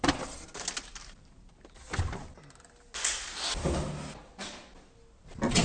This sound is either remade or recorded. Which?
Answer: recorded